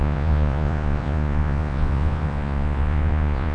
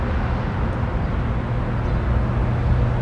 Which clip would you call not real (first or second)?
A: first